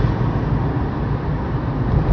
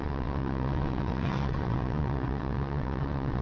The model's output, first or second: second